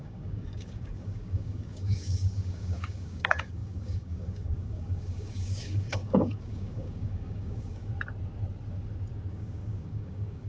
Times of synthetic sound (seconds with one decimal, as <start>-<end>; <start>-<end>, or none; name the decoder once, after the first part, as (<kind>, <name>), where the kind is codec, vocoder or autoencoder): 0.0-7.9 (codec, DAC); 9.3-10.5